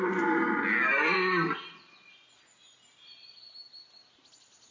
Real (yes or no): yes